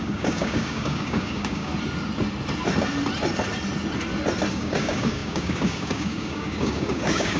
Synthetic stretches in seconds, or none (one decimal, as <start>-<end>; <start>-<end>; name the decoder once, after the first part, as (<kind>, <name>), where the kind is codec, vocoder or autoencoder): 0.0-1.7 (codec, DAC); 4.5-7.4